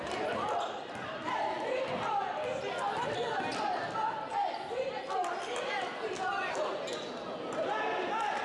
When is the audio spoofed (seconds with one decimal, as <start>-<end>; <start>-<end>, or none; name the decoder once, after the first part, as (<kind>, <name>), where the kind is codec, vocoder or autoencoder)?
none